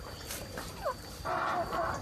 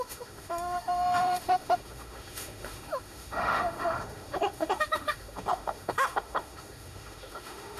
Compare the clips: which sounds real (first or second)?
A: first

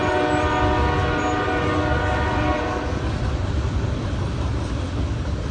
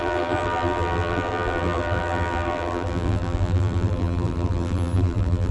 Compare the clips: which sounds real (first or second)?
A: first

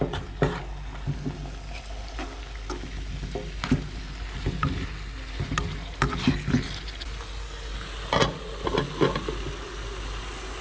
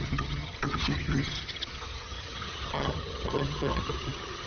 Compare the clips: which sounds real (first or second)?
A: first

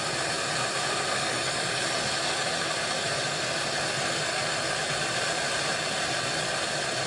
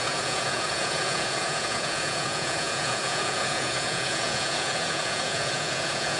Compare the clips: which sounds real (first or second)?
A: first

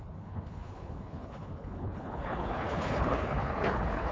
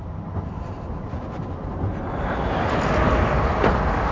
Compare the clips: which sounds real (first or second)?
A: second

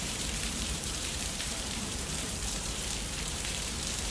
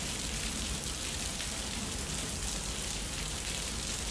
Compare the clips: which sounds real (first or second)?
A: second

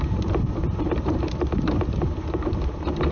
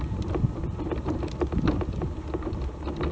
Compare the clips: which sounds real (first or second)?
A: second